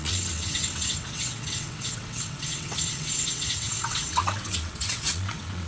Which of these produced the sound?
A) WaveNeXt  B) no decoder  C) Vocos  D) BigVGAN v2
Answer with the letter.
A